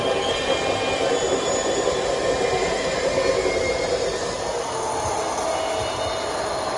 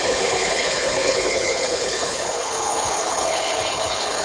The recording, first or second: first